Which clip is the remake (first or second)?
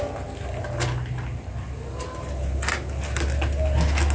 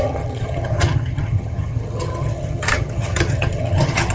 second